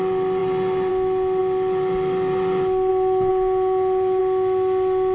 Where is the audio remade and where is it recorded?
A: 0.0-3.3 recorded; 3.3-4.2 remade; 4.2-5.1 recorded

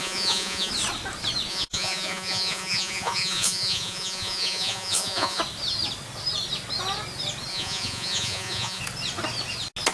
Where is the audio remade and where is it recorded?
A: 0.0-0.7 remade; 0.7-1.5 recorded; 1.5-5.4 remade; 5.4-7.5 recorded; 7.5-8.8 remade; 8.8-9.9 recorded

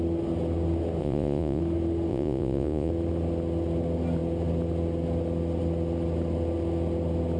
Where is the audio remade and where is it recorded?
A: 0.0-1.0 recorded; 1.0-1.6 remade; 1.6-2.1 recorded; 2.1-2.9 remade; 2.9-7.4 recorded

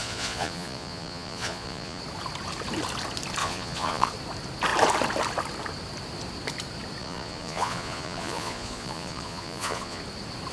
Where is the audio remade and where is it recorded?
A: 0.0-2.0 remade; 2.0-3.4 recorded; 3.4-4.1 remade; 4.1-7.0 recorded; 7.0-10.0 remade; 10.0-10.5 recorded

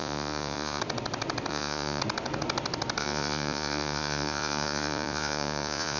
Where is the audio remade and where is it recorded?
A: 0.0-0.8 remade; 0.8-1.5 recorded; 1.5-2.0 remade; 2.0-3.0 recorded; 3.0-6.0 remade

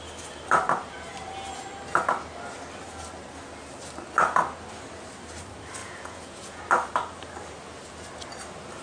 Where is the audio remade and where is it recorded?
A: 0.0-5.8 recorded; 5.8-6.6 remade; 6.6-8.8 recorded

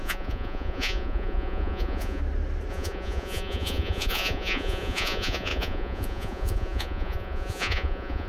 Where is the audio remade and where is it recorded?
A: 0.0-2.2 remade; 2.2-2.7 recorded; 2.7-8.3 remade

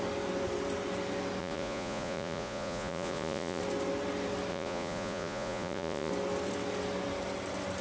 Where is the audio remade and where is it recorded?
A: 0.0-1.4 recorded; 1.4-3.6 remade; 3.6-4.5 recorded; 4.5-6.1 remade; 6.1-7.8 recorded